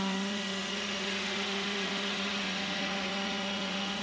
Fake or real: fake